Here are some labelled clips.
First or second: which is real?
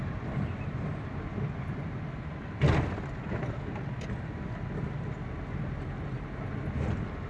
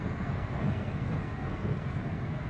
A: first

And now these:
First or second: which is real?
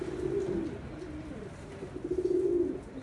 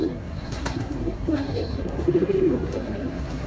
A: first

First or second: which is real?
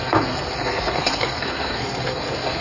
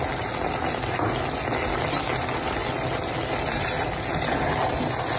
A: second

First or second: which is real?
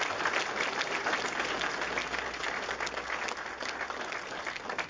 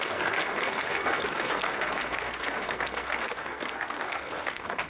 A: first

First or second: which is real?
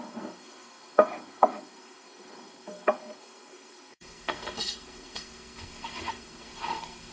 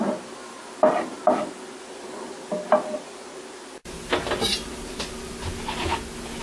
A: second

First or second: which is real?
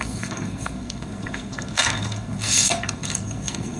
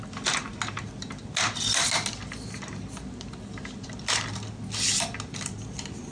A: second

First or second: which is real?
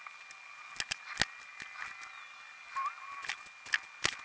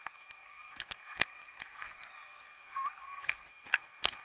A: first